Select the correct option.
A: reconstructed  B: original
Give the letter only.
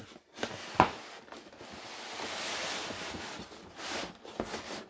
B